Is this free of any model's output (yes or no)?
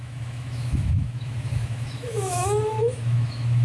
no